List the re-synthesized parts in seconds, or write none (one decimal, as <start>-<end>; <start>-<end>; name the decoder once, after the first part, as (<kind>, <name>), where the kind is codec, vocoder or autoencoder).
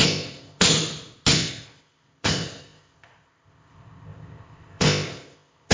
0.0-0.7 (codec, ZipCodec); 1.3-5.7